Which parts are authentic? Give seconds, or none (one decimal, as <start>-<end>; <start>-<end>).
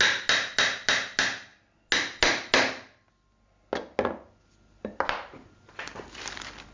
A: 0.0-6.7